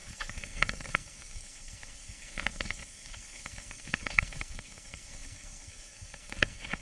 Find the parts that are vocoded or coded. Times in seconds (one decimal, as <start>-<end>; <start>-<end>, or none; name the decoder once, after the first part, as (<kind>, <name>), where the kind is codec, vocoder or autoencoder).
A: 0.0-6.8 (codec, SNAC)